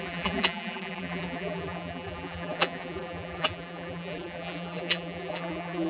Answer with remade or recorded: remade